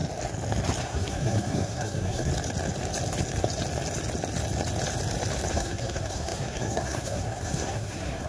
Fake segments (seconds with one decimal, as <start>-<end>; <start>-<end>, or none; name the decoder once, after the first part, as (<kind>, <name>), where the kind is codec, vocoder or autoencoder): 0.8-2.3 (codec, SNAC); 5.5-8.3

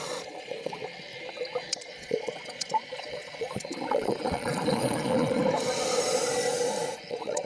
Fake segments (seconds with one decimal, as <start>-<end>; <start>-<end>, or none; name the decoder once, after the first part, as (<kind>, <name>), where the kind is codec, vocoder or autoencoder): 0.0-0.8 (vocoder, Vocos); 1.6-5.4; 7.1-7.5

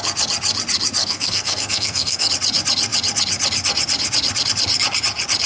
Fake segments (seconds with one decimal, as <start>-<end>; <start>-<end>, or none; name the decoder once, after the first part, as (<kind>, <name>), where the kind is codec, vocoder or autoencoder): 1.0-2.3 (codec, SNAC)

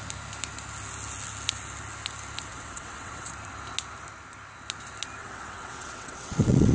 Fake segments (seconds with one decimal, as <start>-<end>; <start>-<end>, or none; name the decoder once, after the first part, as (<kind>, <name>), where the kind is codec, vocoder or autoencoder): 2.5-3.3 (vocoder, WaveNeXt); 5.2-6.7

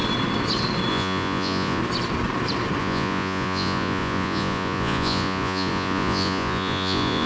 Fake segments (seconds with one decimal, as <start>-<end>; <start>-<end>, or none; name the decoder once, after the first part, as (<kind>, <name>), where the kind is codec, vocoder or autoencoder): 0.9-1.8 (vocoder, Vocos); 2.8-7.3

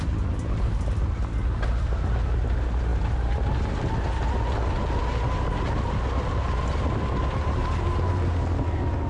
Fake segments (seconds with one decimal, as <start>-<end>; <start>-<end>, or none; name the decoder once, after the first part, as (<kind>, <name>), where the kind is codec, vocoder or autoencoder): 2.9-3.9 (vocoder, BigVGAN v2); 7.6-8.1

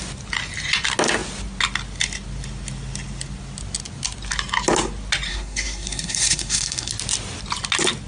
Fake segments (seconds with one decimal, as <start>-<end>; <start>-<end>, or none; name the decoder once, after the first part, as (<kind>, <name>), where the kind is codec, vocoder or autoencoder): 5.3-6.9 (codec, SNAC)